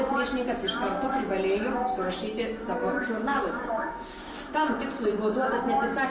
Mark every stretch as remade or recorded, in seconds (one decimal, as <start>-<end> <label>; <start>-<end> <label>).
0.0-2.8 recorded; 2.8-4.7 remade; 4.7-6.1 recorded